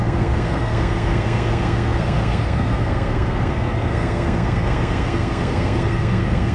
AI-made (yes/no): yes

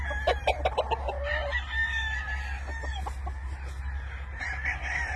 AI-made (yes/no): no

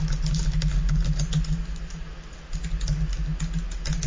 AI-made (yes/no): no